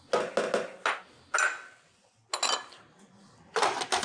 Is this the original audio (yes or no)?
yes